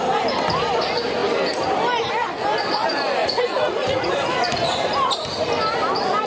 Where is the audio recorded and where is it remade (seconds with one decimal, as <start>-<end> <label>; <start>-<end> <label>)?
0.0-3.2 recorded; 3.2-4.1 remade; 4.1-6.3 recorded